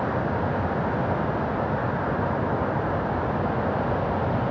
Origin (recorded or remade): recorded